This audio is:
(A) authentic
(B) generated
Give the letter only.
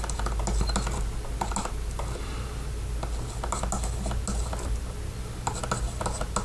A